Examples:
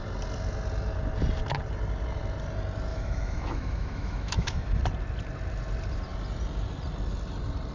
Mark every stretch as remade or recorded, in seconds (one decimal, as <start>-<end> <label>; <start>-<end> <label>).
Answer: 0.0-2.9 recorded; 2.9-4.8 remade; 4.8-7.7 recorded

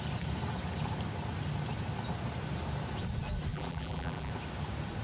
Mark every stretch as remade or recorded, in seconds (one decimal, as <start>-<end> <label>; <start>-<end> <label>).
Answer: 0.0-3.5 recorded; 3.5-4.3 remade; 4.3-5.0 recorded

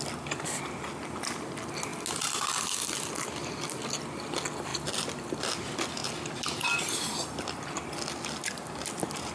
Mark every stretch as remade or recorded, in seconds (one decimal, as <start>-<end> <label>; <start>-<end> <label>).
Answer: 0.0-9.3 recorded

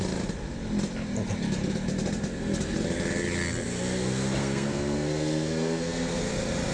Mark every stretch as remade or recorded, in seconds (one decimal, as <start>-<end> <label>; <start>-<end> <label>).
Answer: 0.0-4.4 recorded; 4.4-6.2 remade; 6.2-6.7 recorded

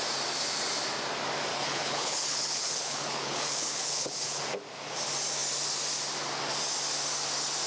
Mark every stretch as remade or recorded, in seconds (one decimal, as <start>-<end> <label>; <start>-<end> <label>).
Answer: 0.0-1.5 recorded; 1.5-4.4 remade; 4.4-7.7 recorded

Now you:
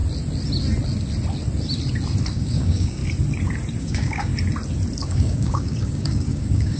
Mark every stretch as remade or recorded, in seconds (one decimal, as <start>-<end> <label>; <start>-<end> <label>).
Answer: 0.0-2.3 recorded; 2.3-3.0 remade; 3.0-3.8 recorded; 3.8-4.3 remade; 4.3-5.0 recorded; 5.0-6.8 remade

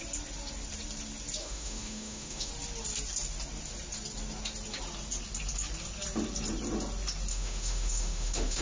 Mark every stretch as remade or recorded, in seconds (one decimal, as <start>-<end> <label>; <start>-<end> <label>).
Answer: 0.0-1.4 recorded; 1.4-2.5 remade; 2.5-7.3 recorded; 7.3-8.6 remade